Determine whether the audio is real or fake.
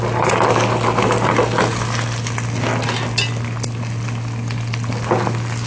real